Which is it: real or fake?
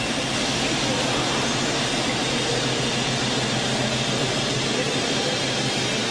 real